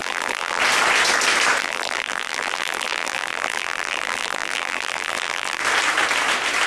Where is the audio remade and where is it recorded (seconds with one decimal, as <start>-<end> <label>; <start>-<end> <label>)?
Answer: 0.0-0.6 remade; 0.6-1.6 recorded; 1.6-5.6 remade; 5.6-6.7 recorded